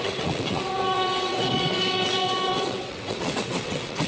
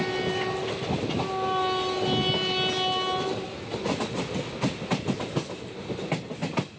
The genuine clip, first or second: second